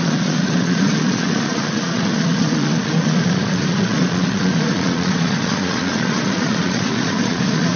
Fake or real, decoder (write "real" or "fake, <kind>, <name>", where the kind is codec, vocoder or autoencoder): fake, vocoder, Vocos